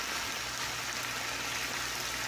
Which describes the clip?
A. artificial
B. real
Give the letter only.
B